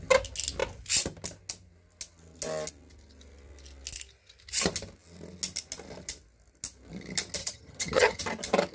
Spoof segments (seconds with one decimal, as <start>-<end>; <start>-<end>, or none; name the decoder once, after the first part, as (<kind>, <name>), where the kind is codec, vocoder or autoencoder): 7.4-8.2 (vocoder, HiFi-GAN)